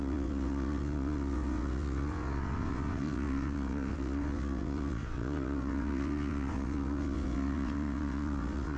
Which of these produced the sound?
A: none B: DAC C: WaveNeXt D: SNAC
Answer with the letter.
C